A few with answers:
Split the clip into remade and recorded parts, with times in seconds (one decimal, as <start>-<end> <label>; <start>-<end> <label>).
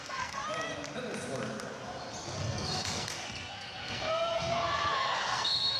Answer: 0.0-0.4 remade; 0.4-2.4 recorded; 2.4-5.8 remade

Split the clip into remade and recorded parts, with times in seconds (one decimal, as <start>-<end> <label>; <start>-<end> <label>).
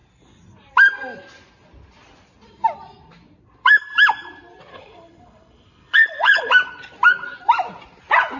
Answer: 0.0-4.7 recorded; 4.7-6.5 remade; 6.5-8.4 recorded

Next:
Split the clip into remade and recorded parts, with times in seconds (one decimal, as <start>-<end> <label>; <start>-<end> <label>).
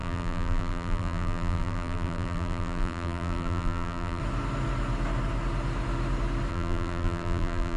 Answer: 0.0-4.2 remade; 4.2-6.5 recorded; 6.5-7.8 remade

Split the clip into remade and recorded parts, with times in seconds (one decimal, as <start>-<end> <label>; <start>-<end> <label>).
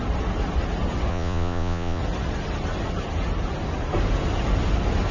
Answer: 0.0-1.1 recorded; 1.1-2.0 remade; 2.0-5.1 recorded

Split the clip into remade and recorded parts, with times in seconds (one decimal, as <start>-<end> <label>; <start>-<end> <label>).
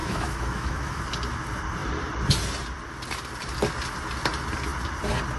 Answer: 0.0-1.0 remade; 1.0-5.4 recorded